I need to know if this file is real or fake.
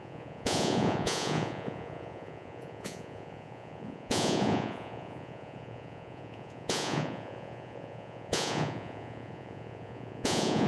fake